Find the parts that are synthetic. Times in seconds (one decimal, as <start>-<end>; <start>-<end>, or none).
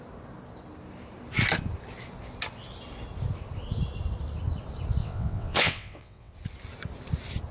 5.0-6.3